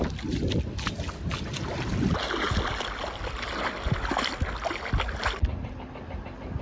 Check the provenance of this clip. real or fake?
real